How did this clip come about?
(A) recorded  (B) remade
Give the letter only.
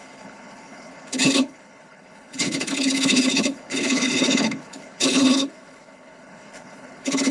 B